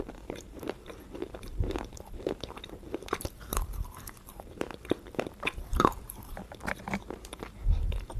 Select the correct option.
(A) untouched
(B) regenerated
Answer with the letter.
B